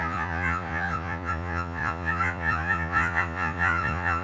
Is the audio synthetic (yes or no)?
yes